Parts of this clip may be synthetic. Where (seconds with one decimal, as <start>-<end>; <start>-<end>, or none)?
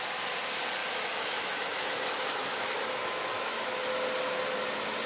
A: 0.8-3.9